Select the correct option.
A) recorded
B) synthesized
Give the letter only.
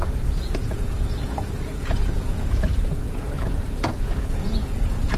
B